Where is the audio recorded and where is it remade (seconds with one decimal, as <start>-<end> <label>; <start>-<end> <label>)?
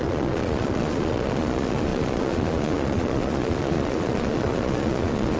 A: 0.0-5.4 remade